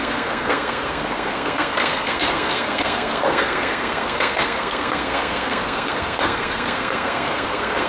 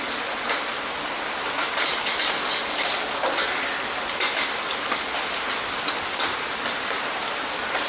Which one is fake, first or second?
first